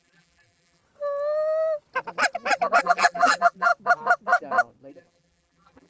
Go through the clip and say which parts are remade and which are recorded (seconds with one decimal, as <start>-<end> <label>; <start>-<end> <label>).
0.0-0.8 remade; 0.8-2.8 recorded; 2.8-3.7 remade; 3.7-4.9 recorded; 4.9-5.9 remade